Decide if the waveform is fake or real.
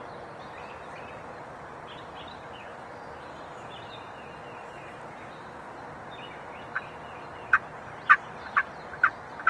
real